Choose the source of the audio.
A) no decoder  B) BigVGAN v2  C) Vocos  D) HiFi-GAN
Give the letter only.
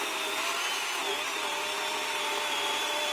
A